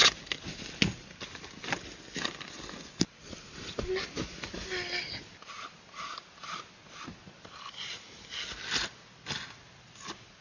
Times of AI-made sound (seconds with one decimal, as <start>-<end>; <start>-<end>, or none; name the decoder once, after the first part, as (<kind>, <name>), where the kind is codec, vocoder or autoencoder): none